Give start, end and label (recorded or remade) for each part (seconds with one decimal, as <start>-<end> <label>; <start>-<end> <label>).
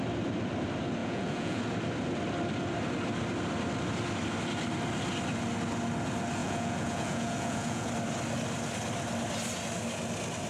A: 0.0-1.0 recorded; 1.0-1.6 remade; 1.6-6.4 recorded; 6.4-7.9 remade; 7.9-10.5 recorded